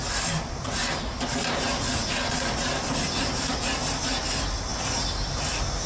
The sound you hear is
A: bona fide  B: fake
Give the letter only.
A